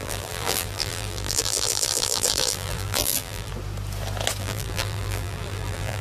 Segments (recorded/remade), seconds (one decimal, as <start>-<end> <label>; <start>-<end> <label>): 0.0-3.5 remade; 3.5-4.4 recorded; 4.4-6.0 remade